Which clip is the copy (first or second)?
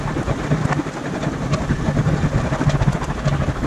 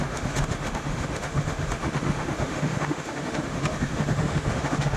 second